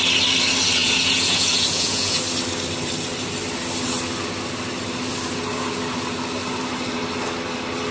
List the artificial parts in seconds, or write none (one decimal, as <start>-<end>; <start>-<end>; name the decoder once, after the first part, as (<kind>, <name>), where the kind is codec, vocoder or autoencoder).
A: 0.8-2.2 (vocoder, Vocos)